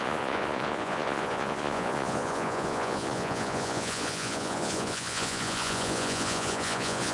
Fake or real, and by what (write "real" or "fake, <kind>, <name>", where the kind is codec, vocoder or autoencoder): fake, vocoder, Vocos